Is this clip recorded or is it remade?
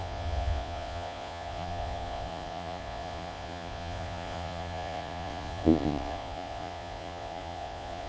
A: remade